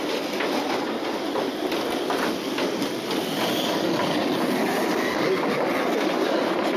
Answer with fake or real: real